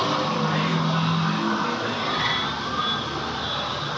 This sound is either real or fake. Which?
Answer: real